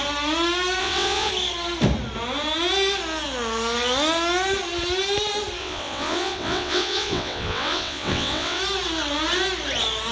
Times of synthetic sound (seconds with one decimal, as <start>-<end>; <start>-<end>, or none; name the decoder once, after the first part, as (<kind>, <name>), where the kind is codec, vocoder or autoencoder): 0.8-1.3 (vocoder, WaveNeXt); 5.6-8.6